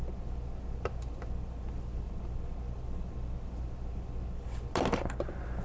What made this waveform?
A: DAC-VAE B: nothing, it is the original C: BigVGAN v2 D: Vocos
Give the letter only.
B